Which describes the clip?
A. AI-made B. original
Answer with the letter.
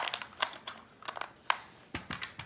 B